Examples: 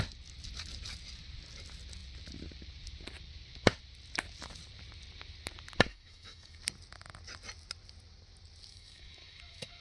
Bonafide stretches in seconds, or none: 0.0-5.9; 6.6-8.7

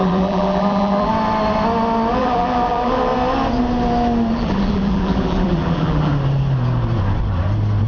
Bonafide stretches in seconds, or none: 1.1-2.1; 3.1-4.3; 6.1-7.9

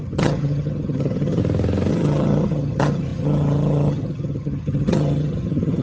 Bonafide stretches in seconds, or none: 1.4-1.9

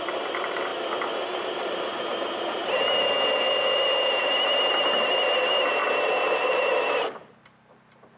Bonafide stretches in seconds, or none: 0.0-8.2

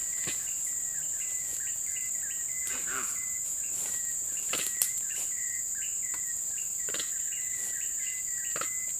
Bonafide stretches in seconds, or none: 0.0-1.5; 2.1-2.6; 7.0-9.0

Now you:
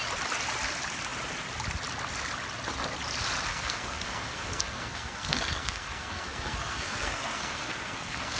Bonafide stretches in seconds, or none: 0.0-3.5